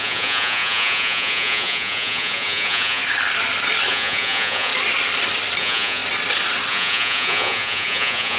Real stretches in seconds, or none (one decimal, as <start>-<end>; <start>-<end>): 3.0-3.9; 4.7-5.6; 6.0-6.7